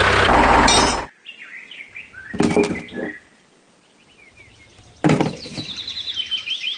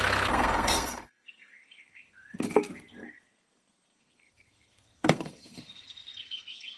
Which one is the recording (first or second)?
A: first